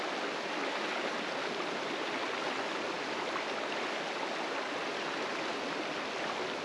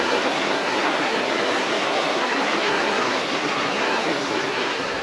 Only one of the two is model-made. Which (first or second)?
second